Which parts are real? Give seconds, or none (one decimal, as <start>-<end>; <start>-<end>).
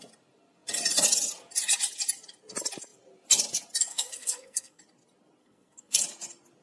0.0-3.9; 4.8-5.4; 6.0-6.6